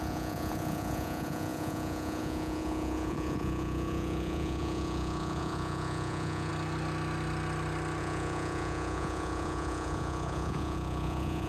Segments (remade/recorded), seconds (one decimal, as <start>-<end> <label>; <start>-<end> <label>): 0.0-6.5 remade; 6.5-8.0 recorded; 8.0-11.5 remade